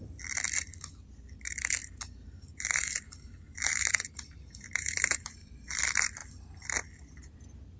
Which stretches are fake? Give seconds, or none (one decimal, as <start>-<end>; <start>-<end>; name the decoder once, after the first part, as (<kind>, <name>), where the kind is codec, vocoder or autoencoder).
1.8-5.8 (vocoder, BigVGAN v2)